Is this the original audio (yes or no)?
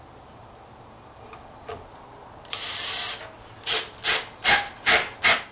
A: yes